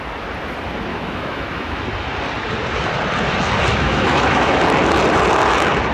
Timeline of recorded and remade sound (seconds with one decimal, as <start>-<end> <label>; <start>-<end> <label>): 0.0-0.9 recorded; 0.9-1.8 remade; 1.8-3.7 recorded; 3.7-4.6 remade; 4.6-5.9 recorded